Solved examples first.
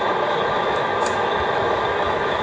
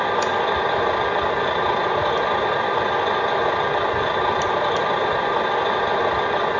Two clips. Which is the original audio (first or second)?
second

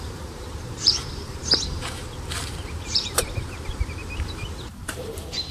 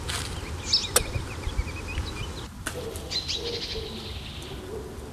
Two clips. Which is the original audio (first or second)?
second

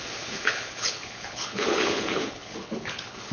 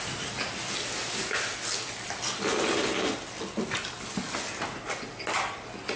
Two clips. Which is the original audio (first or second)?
second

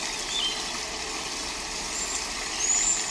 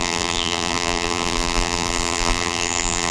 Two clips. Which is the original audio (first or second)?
first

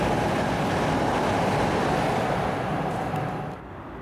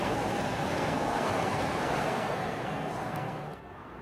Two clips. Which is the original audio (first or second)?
first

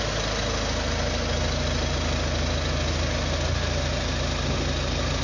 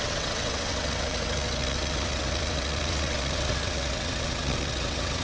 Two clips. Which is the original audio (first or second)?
first